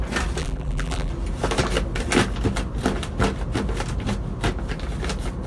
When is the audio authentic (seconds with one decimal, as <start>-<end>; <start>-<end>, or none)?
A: 0.0-0.4; 1.1-5.5